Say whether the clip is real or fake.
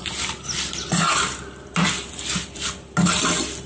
real